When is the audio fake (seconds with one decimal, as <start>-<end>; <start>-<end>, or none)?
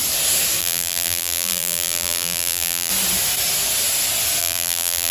0.6-2.9; 4.4-5.1